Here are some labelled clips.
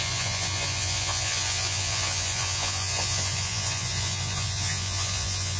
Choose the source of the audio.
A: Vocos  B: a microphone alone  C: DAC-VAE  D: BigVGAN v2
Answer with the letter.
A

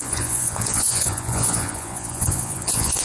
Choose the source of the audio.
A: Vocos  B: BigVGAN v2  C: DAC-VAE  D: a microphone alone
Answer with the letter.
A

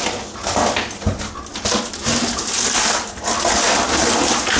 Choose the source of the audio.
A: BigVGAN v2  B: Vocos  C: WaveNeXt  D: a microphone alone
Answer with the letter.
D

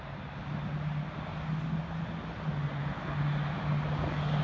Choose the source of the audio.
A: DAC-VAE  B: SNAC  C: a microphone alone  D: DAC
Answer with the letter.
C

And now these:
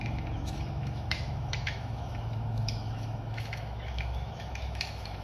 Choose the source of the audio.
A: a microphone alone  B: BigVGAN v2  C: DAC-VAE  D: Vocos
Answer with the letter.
C